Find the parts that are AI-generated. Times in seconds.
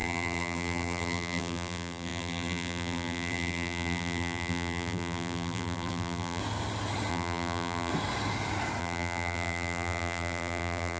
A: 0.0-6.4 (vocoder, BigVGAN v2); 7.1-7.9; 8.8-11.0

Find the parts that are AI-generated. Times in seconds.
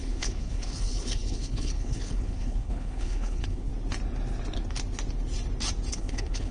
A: 0.0-3.7 (codec, HILCodec); 5.9-6.5